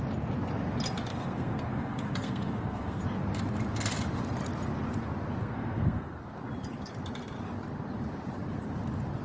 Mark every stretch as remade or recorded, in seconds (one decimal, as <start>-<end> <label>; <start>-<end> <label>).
0.0-1.1 recorded; 1.1-3.0 remade; 3.0-5.4 recorded; 5.4-6.2 remade; 6.2-9.2 recorded